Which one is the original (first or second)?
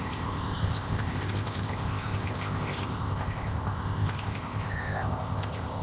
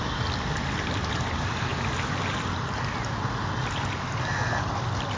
second